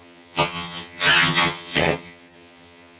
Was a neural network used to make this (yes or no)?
yes